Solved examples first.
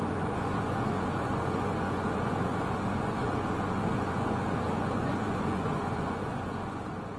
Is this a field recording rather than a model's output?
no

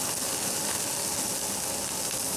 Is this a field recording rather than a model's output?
yes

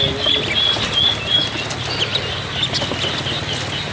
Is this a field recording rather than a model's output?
yes